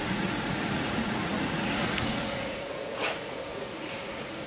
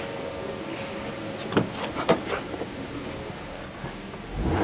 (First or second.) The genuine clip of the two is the second